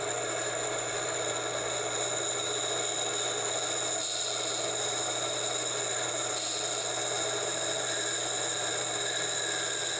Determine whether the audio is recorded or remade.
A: recorded